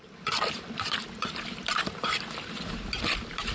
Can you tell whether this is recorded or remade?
recorded